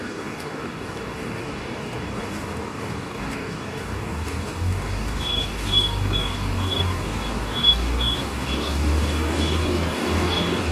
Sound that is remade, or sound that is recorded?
remade